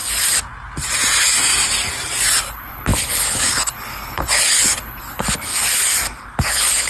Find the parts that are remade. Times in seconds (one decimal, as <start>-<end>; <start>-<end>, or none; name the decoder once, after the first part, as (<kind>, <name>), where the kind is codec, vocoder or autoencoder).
2.4-5.5 (codec, HILCodec); 6.5-6.9